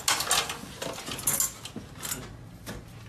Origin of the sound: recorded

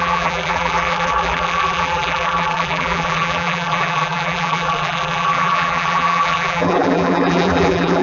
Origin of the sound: remade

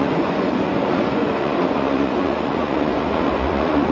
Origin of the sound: remade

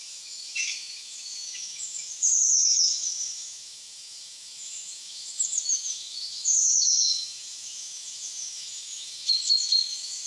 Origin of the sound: remade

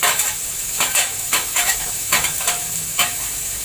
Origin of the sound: remade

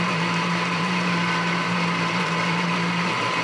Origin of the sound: remade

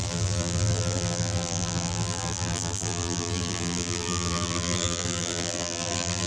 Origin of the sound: remade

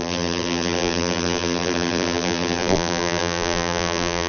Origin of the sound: remade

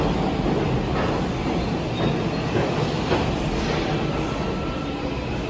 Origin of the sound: recorded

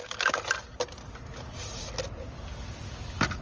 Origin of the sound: recorded